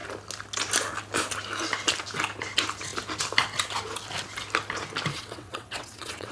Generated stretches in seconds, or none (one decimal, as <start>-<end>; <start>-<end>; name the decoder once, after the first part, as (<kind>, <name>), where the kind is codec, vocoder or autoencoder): 5.1-6.3 (vocoder, WaveNeXt)